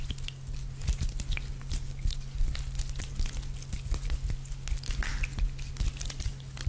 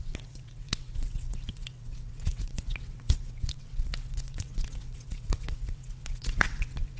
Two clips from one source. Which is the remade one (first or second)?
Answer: second